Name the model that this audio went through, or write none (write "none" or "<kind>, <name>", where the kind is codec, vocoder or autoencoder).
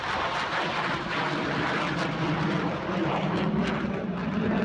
none